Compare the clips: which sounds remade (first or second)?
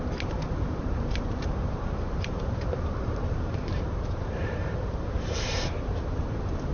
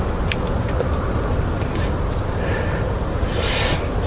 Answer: first